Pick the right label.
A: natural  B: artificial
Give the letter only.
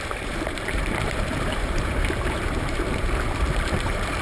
B